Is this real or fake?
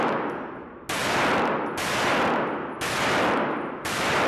real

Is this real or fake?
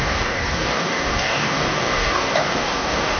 fake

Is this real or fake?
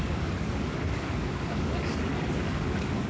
fake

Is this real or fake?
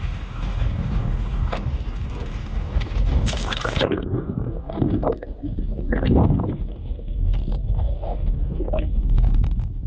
fake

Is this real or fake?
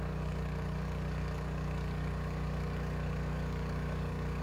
fake